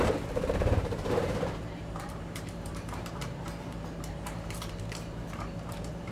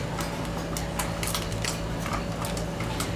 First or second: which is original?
second